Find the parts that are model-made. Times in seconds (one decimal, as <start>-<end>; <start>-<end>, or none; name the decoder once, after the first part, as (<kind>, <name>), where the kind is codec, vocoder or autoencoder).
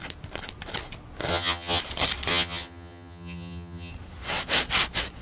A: 1.3-1.8 (vocoder, HiFi-GAN); 2.3-3.9